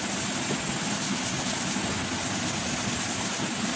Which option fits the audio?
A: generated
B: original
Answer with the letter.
B